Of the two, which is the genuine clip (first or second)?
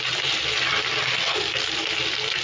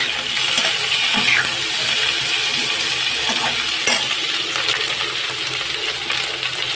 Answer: second